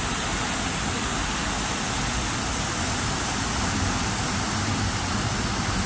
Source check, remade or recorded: recorded